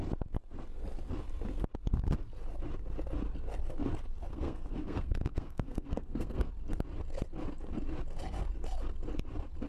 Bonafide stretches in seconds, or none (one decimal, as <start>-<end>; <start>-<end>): 0.0-4.3; 6.5-9.7